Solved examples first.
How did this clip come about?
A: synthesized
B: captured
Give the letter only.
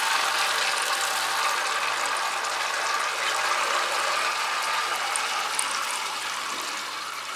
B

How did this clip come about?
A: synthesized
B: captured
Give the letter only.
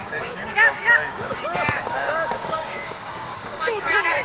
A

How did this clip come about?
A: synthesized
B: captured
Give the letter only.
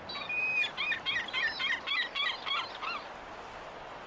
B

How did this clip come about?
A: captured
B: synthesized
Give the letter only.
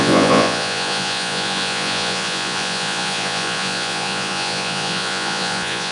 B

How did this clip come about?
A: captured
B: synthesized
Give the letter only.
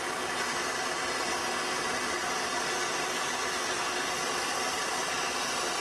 A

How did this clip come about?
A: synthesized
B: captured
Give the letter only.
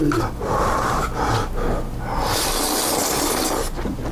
B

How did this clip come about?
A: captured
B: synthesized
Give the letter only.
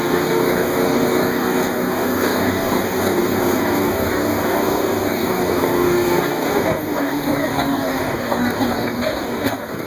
B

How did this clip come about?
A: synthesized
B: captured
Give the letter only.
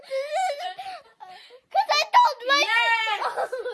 B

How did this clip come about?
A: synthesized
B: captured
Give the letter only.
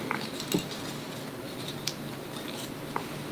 B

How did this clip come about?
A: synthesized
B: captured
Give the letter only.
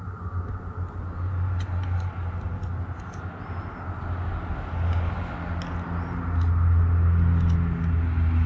B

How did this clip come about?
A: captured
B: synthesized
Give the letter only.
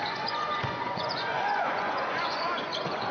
B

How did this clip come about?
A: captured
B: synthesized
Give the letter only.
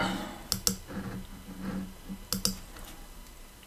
A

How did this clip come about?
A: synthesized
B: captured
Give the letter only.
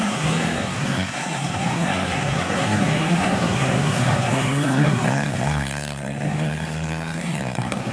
A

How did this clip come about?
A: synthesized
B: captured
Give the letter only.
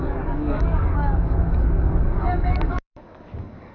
A